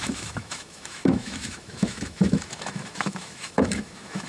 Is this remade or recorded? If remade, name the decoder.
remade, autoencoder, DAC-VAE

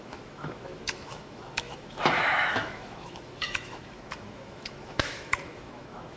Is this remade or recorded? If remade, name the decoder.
remade, autoencoder, DAC-VAE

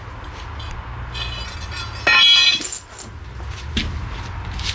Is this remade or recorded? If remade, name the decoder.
recorded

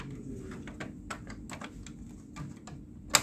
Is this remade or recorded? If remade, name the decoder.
recorded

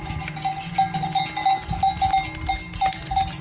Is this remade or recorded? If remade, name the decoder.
recorded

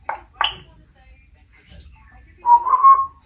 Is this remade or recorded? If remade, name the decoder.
recorded